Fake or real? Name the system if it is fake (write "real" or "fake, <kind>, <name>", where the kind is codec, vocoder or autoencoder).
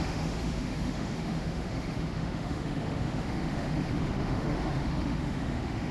fake, autoencoder, DAC-VAE